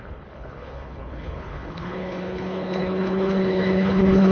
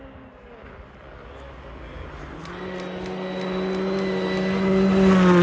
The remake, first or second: first